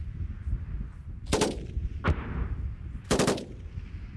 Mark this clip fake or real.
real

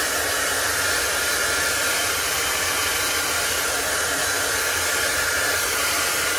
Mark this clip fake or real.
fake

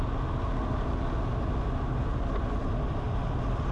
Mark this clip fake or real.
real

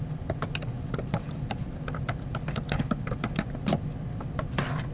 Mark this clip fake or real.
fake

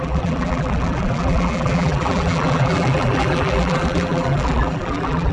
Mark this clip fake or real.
fake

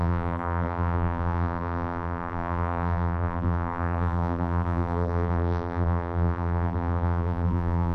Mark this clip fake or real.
fake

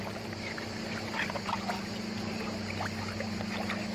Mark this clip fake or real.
real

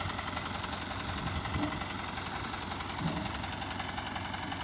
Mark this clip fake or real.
real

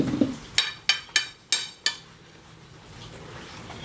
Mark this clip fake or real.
real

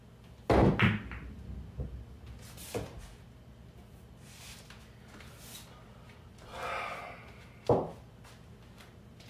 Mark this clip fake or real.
real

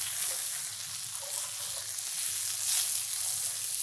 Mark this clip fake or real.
real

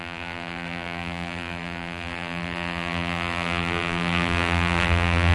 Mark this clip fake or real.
fake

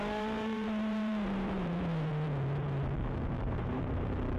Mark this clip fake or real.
fake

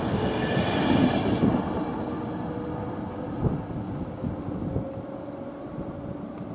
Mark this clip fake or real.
real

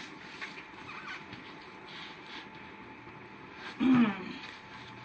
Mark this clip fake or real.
real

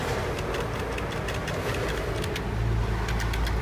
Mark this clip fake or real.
real